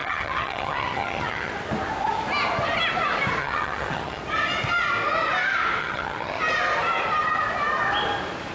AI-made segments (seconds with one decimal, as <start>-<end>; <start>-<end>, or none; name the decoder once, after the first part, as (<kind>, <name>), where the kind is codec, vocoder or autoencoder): 0.0-1.5 (vocoder, HiFi-GAN); 3.4-4.2; 5.8-6.4